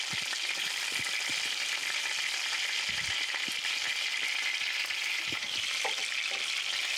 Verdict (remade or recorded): recorded